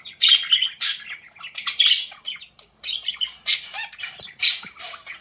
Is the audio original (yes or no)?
yes